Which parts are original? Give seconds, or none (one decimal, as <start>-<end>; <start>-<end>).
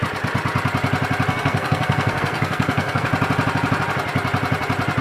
0.0-1.3; 3.1-5.0